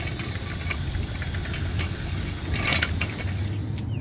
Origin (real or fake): real